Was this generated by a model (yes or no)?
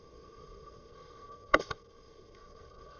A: yes